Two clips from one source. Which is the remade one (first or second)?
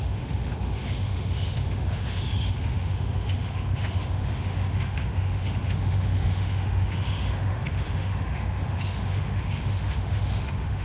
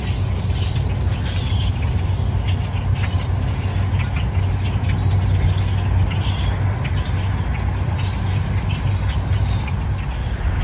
first